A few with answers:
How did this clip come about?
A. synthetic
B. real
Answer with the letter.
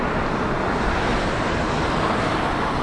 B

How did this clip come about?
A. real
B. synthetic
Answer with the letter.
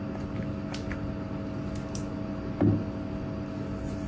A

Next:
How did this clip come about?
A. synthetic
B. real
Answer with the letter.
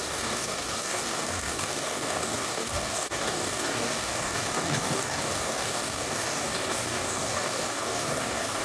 A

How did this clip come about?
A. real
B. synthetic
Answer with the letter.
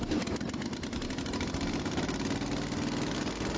A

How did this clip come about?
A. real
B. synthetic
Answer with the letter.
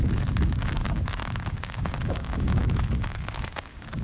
B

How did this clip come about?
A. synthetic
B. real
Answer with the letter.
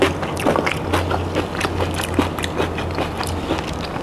B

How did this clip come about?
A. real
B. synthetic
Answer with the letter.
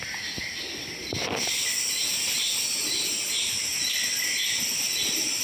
A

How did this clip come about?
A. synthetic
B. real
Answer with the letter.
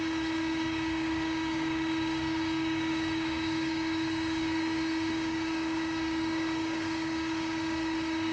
A